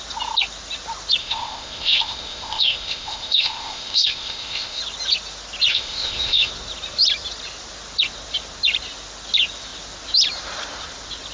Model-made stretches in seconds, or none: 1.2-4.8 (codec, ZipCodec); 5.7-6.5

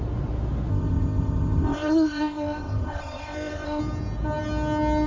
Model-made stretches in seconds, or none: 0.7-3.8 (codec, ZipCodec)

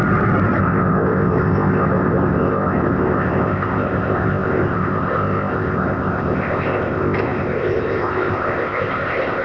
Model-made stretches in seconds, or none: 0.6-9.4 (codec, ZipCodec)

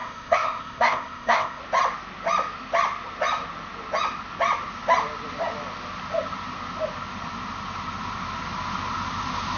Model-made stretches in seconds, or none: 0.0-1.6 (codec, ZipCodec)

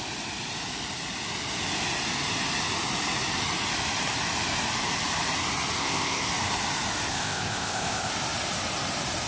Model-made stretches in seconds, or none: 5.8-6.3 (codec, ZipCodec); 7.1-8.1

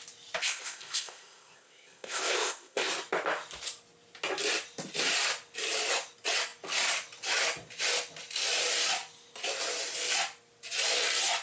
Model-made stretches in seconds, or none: 0.4-2.9 (codec, ZipCodec)

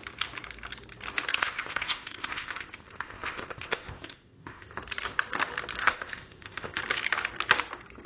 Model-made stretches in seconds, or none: 1.3-4.8 (codec, ZipCodec); 5.8-6.8